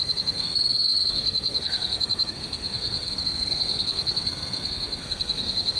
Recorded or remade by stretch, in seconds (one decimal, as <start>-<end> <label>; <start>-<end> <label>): 0.0-5.8 remade